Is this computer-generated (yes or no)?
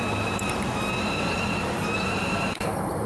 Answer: yes